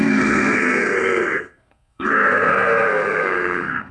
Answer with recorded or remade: remade